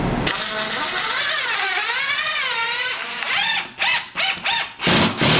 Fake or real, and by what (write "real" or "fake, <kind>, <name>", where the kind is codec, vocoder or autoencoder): real